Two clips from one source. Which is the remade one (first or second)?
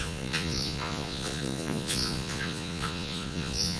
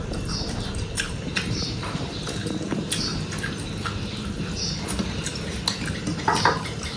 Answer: first